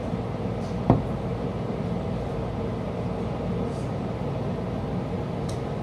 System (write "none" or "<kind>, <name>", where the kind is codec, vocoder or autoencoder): none